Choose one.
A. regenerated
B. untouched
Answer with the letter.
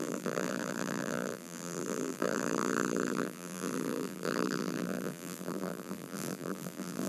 A